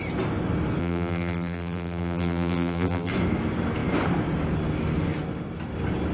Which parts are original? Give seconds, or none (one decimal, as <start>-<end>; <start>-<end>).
0.0-0.8; 3.1-6.1